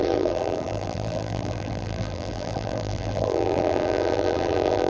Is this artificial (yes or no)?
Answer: yes